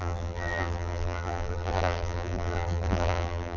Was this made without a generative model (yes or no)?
no